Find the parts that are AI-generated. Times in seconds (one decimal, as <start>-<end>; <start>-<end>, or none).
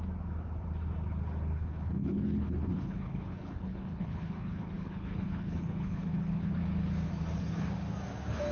1.5-6.6